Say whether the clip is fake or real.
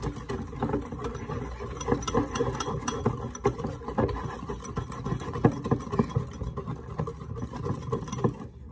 real